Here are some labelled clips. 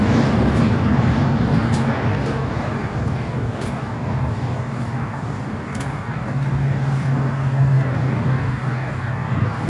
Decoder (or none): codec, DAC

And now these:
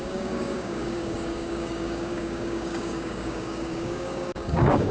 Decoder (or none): codec, DAC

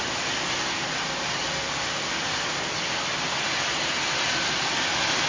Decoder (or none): none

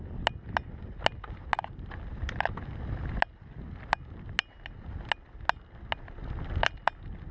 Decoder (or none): none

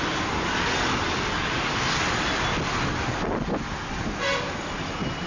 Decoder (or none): none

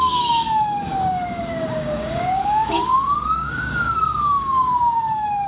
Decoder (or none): codec, DAC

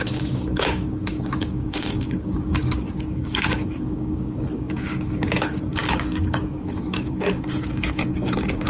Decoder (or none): codec, DAC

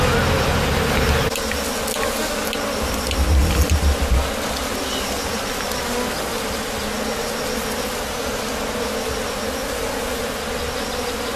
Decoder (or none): none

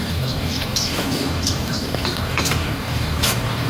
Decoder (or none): codec, DAC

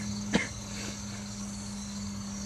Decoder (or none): codec, DAC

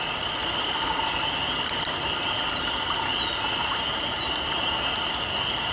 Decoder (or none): none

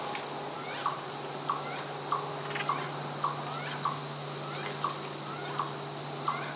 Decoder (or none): none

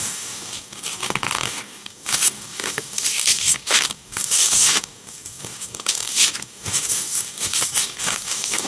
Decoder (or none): codec, DAC